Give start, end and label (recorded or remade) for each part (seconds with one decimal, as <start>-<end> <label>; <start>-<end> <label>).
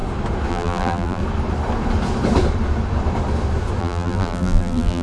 0.0-0.5 recorded; 0.5-1.2 remade; 1.2-3.8 recorded; 3.8-5.0 remade